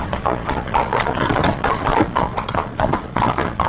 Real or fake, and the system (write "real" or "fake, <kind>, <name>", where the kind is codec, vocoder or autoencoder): fake, vocoder, Vocos